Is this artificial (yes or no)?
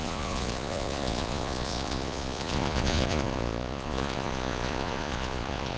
yes